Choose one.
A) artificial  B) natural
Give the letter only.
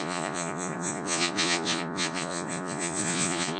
A